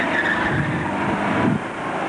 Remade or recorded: recorded